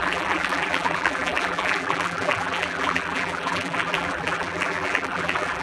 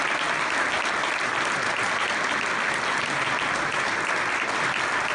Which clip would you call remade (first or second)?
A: first